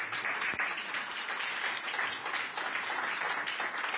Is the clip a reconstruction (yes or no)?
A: no